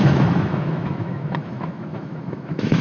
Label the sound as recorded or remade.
remade